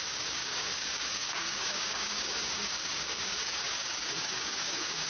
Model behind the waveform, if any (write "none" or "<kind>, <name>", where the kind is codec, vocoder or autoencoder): codec, DAC